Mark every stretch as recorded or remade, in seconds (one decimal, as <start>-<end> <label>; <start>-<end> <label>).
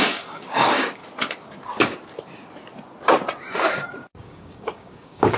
0.0-1.0 remade; 1.0-4.2 recorded; 4.2-5.4 remade